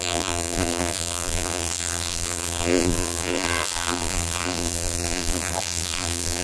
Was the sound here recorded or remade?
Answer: remade